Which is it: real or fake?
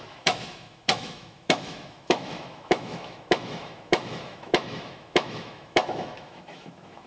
fake